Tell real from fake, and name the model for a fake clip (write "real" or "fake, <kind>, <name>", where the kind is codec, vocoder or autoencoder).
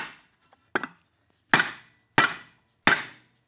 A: real